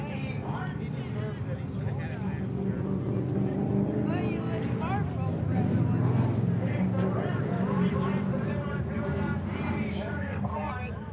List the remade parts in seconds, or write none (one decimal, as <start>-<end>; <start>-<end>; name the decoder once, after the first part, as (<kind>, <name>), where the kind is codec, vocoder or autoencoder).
10.1-10.7 (codec, SNAC)